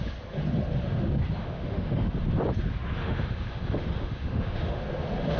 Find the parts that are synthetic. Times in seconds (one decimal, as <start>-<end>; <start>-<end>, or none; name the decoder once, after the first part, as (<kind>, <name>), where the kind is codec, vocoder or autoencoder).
1.4-2.1 (autoencoder, DAC-VAE); 3.0-4.8